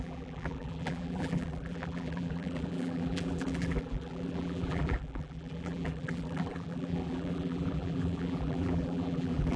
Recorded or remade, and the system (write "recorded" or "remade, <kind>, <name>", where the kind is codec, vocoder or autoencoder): remade, vocoder, BigVGAN v2